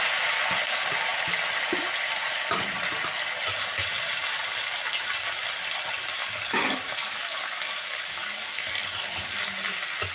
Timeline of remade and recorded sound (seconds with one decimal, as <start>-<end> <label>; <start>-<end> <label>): 0.0-6.2 recorded; 6.2-9.3 remade; 9.3-10.1 recorded